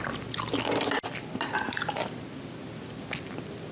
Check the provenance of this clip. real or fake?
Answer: real